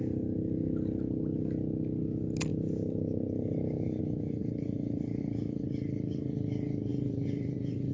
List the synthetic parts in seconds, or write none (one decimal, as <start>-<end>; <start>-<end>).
2.5-4.0; 4.4-5.2; 6.9-7.9